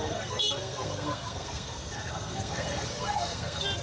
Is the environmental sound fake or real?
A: fake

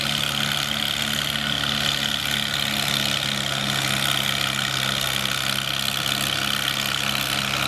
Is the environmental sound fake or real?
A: real